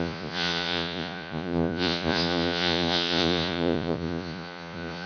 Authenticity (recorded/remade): remade